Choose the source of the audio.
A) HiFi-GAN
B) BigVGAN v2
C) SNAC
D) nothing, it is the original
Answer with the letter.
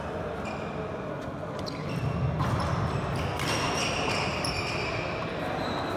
D